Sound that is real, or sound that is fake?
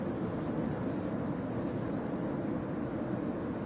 real